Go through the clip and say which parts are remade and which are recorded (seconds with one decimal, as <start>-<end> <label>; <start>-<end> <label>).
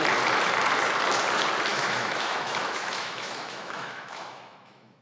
0.0-1.7 recorded; 1.7-5.0 remade